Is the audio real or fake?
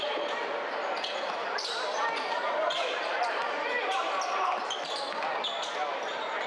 fake